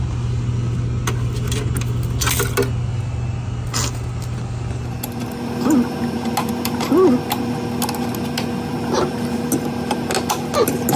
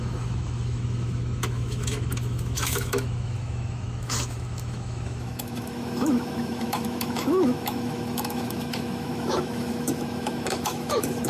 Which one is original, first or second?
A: first